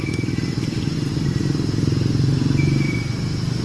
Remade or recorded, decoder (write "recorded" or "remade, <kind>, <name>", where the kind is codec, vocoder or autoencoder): recorded